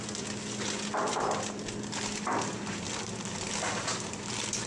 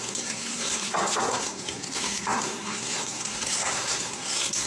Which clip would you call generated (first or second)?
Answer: second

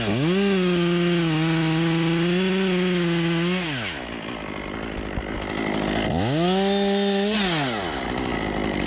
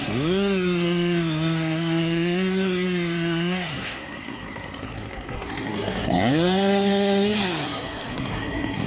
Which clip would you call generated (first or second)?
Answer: second